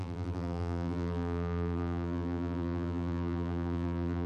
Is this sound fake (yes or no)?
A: yes